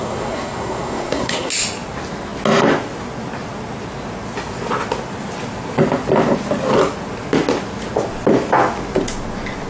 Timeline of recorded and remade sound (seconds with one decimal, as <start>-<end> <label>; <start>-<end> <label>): 0.0-1.5 remade; 1.5-9.7 recorded